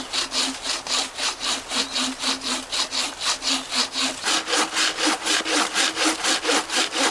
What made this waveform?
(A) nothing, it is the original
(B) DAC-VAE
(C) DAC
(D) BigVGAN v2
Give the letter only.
A